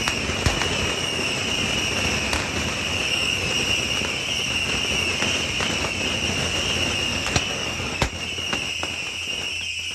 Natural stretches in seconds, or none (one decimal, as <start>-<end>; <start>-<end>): 0.0-2.9; 3.5-7.1; 8.1-9.9